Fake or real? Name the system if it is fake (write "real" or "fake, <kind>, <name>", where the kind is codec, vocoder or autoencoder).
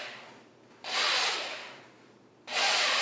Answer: real